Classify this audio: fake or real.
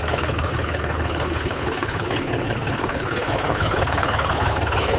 fake